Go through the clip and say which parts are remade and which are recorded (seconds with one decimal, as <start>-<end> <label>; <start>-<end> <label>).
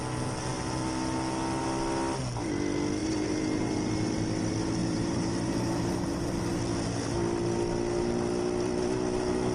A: 0.0-3.0 recorded; 3.0-3.9 remade; 3.9-4.8 recorded; 4.8-6.6 remade; 6.6-9.5 recorded